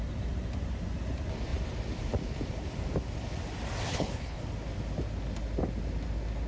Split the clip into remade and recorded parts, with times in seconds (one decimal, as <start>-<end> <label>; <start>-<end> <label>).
0.0-3.9 recorded; 3.9-4.4 remade; 4.4-6.5 recorded

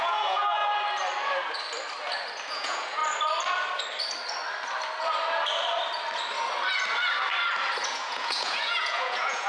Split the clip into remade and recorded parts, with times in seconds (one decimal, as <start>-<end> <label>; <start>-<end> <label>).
0.0-0.6 remade; 0.6-2.5 recorded; 2.5-3.0 remade; 3.0-7.9 recorded; 7.9-9.5 remade

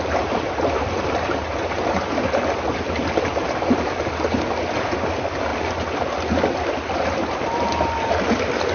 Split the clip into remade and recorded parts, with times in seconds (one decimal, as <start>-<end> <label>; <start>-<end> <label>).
0.0-8.7 recorded

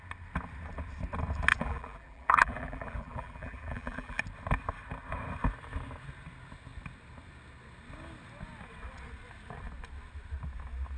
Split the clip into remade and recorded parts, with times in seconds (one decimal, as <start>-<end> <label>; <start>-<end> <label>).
0.0-1.5 recorded; 1.5-4.2 remade; 4.2-11.0 recorded

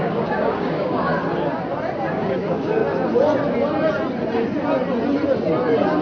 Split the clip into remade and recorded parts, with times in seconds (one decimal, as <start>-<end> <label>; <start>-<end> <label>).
0.0-1.1 remade; 1.1-2.1 recorded; 2.1-2.8 remade; 2.8-6.0 recorded